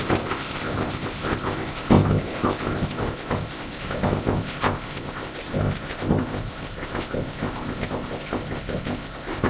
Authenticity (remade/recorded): remade